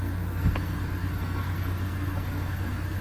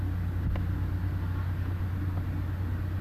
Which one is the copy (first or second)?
first